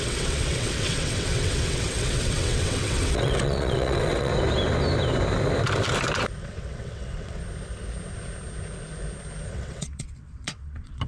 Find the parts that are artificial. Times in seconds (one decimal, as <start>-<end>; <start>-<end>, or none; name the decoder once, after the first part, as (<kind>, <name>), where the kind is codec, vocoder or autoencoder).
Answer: 0.0-4.3 (vocoder, WaveNeXt); 6.4-7.4; 9.5-11.1